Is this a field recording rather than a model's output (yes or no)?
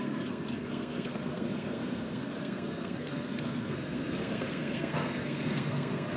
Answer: no